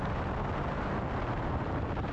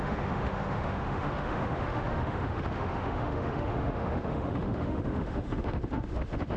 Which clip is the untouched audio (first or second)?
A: first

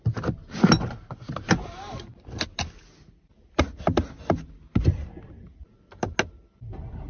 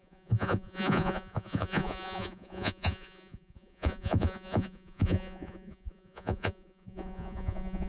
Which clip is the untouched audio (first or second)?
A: first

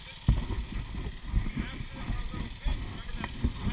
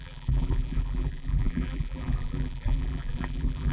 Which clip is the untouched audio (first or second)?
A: first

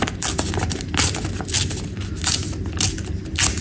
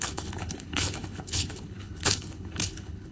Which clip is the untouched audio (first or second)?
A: first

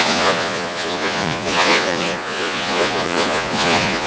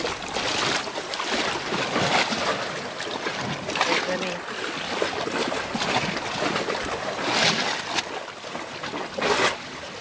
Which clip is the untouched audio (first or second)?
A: second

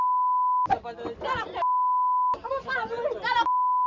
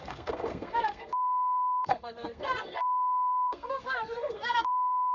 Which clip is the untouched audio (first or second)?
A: first